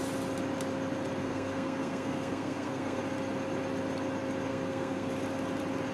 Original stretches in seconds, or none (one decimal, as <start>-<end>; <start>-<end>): 0.0-1.2; 3.0-4.5; 5.1-5.9